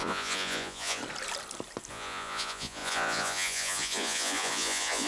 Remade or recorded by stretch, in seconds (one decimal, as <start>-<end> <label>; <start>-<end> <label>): 0.0-1.0 remade; 1.0-1.9 recorded; 1.9-5.1 remade